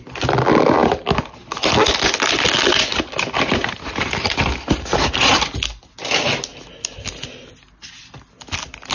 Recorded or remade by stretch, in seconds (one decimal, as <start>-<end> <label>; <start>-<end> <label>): 0.0-8.9 recorded